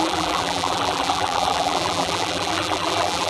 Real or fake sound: fake